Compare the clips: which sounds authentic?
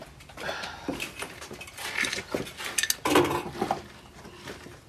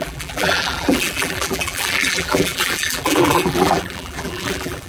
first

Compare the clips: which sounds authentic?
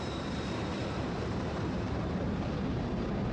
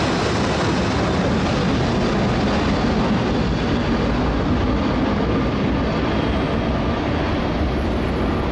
second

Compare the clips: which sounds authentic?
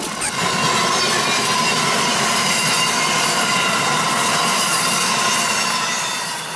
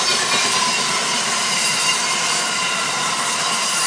first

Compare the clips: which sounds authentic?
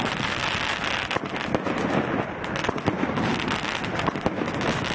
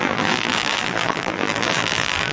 first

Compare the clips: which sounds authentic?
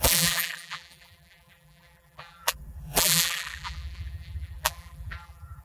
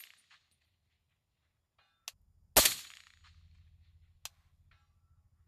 second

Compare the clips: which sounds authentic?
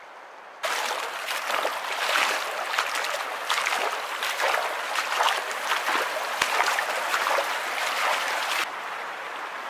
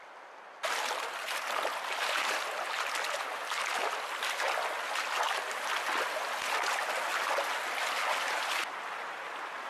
second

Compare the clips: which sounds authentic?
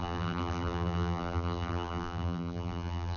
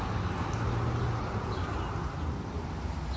second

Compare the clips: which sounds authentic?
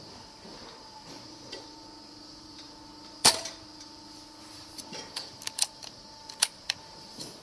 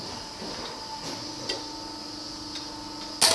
second